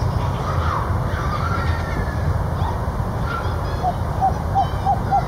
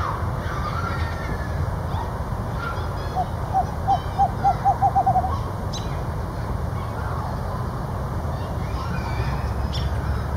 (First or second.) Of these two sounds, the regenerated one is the first